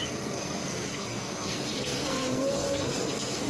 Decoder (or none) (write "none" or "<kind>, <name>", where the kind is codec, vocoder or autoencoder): codec, SNAC